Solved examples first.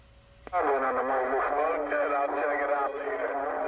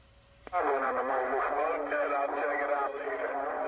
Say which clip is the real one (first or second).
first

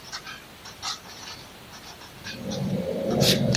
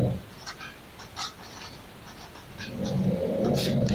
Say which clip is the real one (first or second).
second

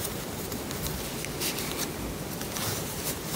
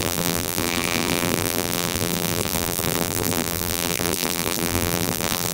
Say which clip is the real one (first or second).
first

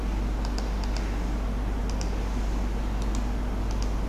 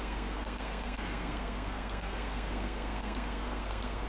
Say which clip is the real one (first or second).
first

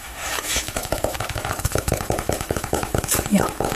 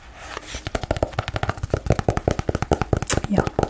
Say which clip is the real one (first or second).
second